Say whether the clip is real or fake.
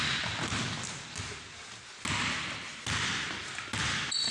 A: real